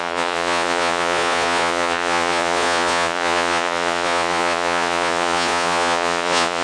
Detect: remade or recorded remade